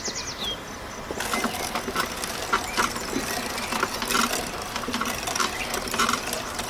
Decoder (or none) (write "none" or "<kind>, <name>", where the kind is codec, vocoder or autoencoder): none